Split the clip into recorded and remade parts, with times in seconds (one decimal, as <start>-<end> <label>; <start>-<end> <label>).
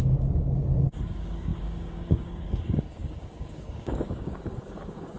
0.0-1.0 recorded; 1.0-5.2 remade